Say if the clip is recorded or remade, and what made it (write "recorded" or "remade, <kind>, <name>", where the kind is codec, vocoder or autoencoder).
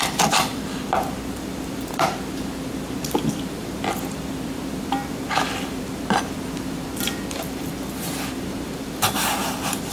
remade, vocoder, BigVGAN v2